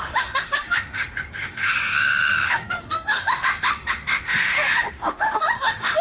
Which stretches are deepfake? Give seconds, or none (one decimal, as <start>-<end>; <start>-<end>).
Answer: 0.0-6.0